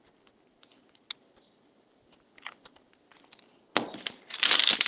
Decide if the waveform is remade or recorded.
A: recorded